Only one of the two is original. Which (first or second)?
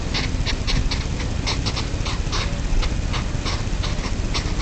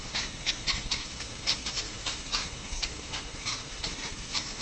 first